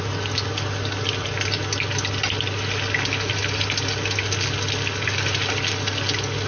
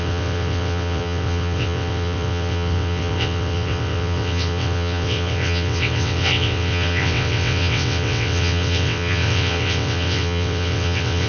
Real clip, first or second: first